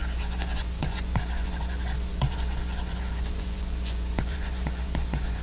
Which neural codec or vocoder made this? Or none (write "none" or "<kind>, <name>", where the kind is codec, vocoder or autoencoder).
vocoder, Vocos